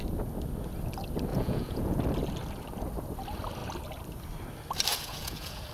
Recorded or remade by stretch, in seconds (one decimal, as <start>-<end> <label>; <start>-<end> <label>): 0.0-1.3 recorded; 1.3-2.0 remade; 2.0-4.9 recorded; 4.9-5.7 remade